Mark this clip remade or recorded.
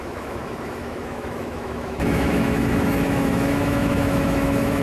remade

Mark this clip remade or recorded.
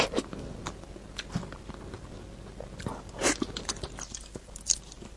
recorded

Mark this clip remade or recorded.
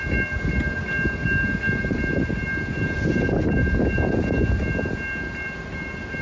recorded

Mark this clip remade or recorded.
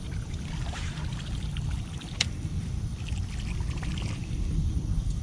remade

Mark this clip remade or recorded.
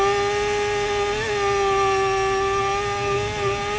recorded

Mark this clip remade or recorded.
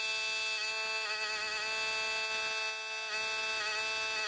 recorded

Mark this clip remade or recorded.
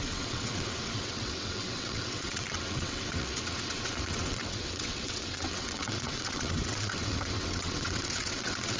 remade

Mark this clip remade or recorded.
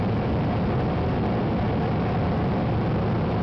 recorded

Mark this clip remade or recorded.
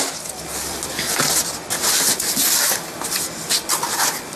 recorded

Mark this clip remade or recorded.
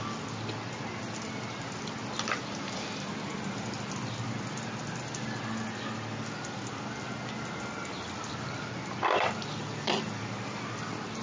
recorded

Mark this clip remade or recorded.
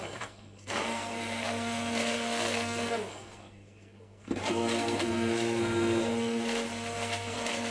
remade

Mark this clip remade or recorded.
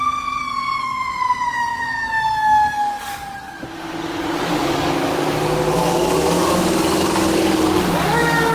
remade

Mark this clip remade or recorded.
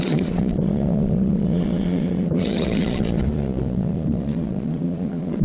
remade